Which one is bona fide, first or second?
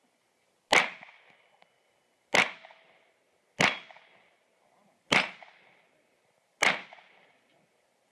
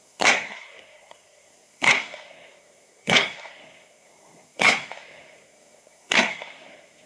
first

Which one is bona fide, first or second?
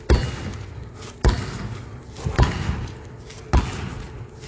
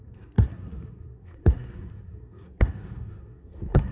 first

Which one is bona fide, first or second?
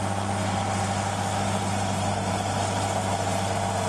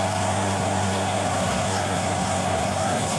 first